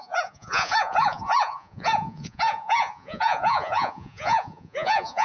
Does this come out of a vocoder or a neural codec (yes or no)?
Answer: yes